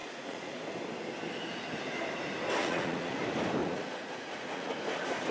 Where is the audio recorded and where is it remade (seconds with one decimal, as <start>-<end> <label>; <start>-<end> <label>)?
0.0-0.6 remade; 0.6-2.6 recorded; 2.6-3.2 remade; 3.2-3.6 recorded; 3.6-4.7 remade; 4.7-5.3 recorded